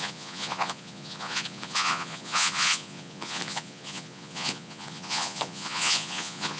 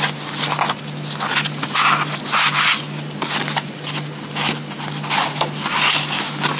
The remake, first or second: first